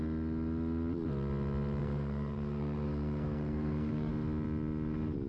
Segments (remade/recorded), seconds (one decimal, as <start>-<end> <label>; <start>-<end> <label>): 0.0-1.8 recorded; 1.8-4.1 remade; 4.1-5.3 recorded